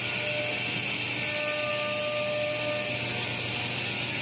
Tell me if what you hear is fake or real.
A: real